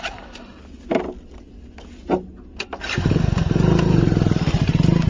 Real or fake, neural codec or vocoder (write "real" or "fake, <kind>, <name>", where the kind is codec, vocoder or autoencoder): real